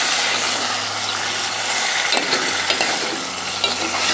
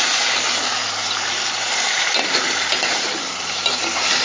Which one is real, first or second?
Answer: first